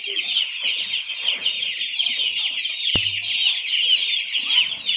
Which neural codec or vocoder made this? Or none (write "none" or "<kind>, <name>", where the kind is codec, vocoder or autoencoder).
none